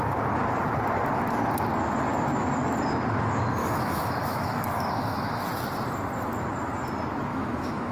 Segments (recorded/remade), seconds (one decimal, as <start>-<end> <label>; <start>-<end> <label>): 0.0-3.6 recorded; 3.6-5.4 remade; 5.4-7.3 recorded; 7.3-7.9 remade